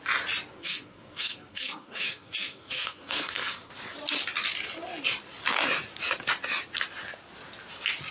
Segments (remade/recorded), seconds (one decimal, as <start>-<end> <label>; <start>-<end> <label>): 0.0-0.6 recorded; 0.6-3.7 remade; 3.7-8.1 recorded